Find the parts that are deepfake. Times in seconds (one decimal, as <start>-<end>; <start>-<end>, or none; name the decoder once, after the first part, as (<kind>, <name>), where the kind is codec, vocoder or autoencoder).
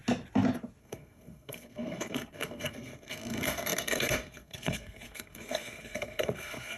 0.8-6.8 (codec, SNAC)